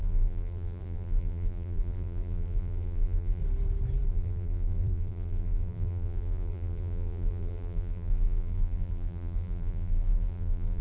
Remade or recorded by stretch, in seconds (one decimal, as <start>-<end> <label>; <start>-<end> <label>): 0.0-3.4 remade; 3.4-4.1 recorded; 4.1-10.8 remade